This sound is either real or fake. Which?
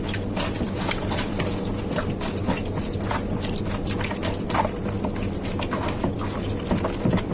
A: real